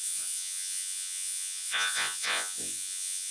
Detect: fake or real fake